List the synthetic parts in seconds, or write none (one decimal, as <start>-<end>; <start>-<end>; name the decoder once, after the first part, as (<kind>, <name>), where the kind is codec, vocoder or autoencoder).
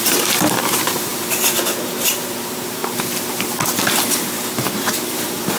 0.0-2.8 (vocoder, BigVGAN v2); 4.0-5.6